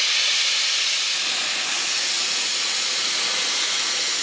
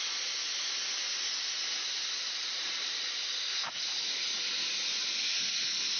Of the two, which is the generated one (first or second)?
first